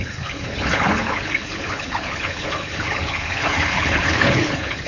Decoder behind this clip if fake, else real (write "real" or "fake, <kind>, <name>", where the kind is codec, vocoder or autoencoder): fake, codec, HILCodec